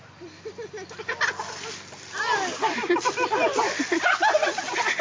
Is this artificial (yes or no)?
no